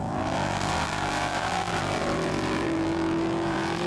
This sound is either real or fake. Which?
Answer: fake